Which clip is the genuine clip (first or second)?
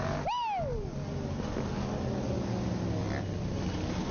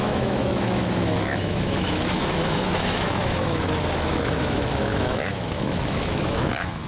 first